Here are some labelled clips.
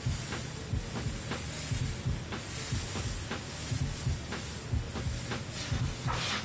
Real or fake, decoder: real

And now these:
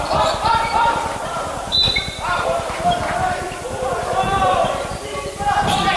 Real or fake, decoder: fake, vocoder, BigVGAN v2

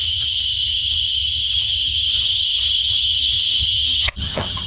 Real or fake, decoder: fake, vocoder, HiFi-GAN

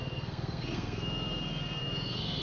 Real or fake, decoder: fake, codec, SNAC